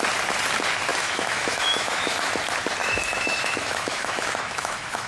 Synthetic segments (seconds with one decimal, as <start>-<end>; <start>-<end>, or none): 0.9-2.3; 2.8-5.1